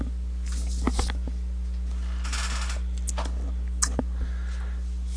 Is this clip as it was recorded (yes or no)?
yes